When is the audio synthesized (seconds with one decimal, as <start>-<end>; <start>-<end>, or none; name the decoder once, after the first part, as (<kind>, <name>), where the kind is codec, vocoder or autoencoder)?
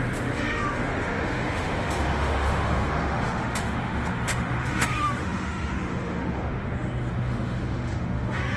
0.0-8.6 (autoencoder, DAC-VAE)